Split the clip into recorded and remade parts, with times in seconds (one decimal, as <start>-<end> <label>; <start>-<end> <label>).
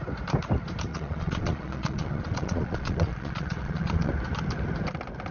0.0-0.9 recorded; 0.9-4.1 remade; 4.1-5.3 recorded